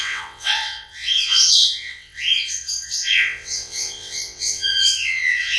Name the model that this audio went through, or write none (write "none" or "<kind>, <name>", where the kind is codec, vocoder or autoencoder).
vocoder, WaveNeXt